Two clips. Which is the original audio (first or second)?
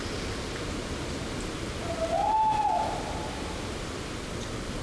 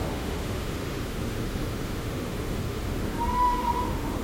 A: first